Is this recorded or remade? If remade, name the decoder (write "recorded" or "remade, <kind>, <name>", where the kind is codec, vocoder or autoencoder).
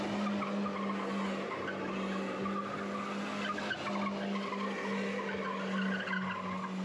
recorded